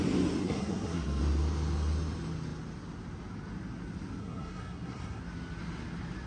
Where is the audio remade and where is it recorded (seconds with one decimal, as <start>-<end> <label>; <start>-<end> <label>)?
0.0-0.4 recorded; 0.4-1.2 remade; 1.2-4.2 recorded; 4.2-5.2 remade; 5.2-6.3 recorded